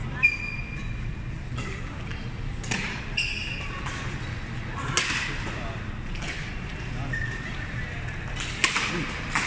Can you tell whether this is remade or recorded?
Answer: recorded